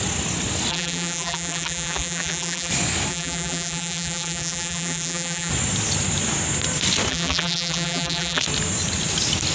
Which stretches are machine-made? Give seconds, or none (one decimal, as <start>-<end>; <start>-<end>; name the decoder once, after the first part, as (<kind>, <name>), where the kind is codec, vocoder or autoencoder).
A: 0.7-2.7 (vocoder, BigVGAN v2); 3.1-5.5; 7.1-8.4